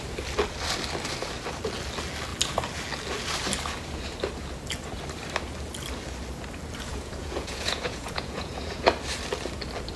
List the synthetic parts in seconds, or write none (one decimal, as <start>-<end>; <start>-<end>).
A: 6.9-8.9